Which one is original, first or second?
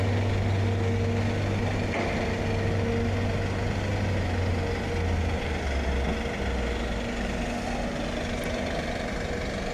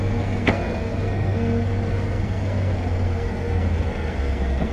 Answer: first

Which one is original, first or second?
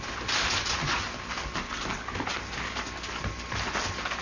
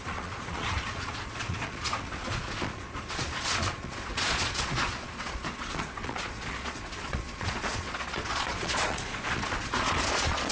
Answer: first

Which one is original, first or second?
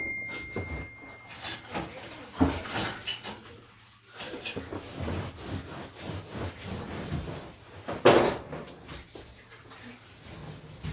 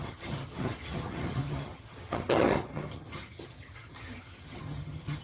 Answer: first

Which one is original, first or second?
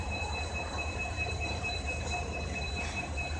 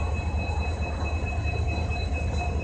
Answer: second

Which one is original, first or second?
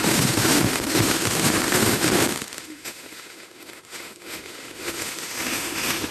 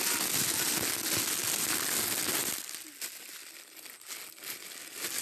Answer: second